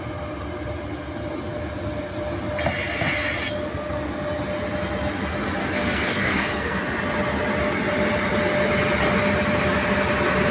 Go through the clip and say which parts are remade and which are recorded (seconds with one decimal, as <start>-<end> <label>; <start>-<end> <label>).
0.0-5.6 recorded; 5.6-6.8 remade; 6.8-10.5 recorded